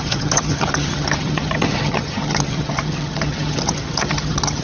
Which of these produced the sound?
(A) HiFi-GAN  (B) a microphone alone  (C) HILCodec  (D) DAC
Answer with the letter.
A